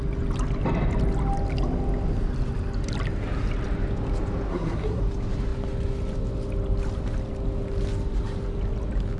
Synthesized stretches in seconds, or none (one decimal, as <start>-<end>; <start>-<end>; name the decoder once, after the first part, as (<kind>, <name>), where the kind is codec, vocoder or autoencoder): 4.5-5.0 (codec, SNAC)